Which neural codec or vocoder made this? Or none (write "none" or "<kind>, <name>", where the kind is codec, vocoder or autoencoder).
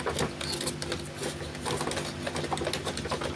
none